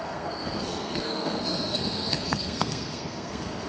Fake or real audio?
fake